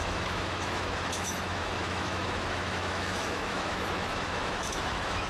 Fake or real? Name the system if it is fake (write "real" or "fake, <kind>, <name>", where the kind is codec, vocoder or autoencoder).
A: fake, autoencoder, DAC-VAE